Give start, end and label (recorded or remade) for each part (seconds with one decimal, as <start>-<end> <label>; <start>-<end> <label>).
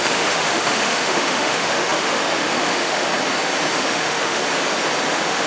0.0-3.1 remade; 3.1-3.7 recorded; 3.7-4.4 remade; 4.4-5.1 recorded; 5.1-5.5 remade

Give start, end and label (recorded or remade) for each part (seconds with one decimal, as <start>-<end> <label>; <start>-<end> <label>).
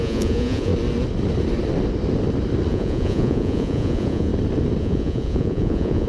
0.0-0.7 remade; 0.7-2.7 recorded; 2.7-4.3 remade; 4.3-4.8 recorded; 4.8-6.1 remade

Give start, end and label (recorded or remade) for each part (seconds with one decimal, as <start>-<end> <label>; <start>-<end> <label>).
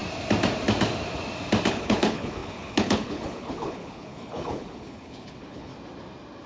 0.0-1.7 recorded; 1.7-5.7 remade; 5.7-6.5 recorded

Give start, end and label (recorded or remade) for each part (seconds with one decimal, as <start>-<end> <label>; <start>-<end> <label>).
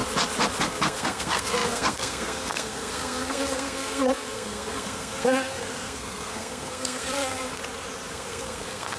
0.0-0.6 recorded; 0.6-7.6 remade; 7.6-8.1 recorded; 8.1-9.0 remade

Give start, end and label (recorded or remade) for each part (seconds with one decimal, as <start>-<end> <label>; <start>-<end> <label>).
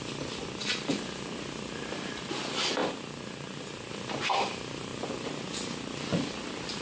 0.0-0.9 remade; 0.9-2.3 recorded; 2.3-6.8 remade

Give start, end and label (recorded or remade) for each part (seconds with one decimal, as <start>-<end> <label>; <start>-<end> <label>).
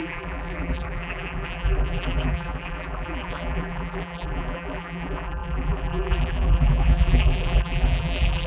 0.0-8.5 remade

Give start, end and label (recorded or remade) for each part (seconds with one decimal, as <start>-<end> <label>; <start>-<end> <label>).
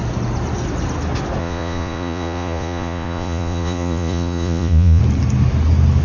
0.0-1.4 recorded; 1.4-5.0 remade; 5.0-6.0 recorded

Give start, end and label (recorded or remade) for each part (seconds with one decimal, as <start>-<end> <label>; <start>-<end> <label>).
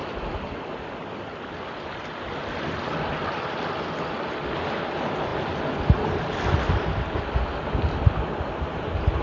0.0-9.2 recorded